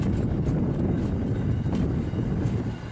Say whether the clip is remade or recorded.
recorded